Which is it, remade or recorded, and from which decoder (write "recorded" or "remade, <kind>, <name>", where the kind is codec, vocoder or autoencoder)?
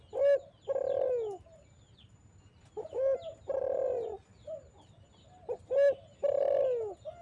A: recorded